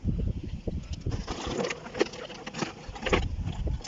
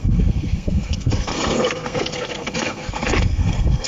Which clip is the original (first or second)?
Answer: first